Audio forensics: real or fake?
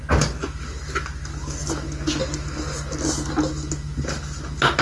real